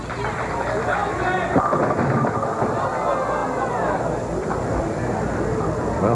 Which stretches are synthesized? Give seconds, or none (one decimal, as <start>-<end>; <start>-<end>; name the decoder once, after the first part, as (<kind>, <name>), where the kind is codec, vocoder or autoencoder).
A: none